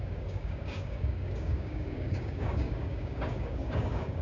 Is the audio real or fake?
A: fake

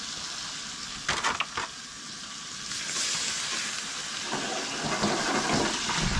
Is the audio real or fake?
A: real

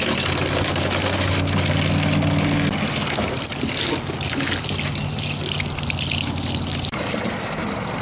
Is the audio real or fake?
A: real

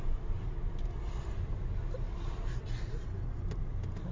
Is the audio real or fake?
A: real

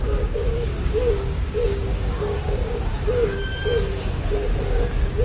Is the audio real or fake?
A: fake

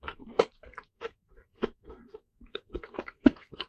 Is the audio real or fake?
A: fake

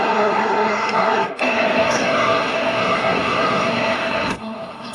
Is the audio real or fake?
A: fake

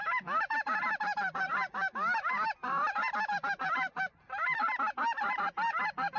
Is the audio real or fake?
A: real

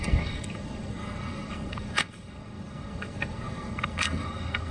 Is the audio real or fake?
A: fake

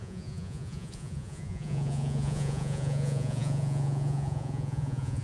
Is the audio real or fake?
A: fake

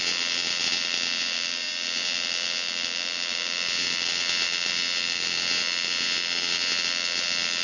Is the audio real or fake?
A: fake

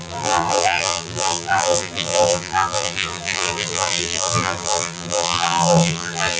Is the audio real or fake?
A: fake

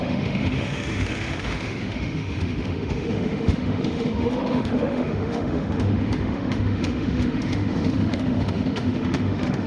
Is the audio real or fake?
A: fake